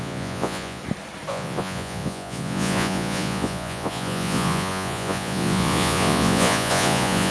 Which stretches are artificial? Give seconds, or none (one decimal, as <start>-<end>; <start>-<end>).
0.0-0.8; 1.3-7.3